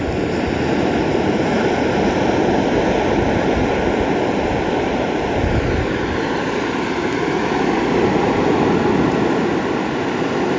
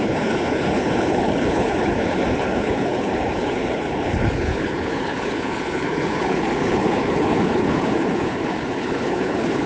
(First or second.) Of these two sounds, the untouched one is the first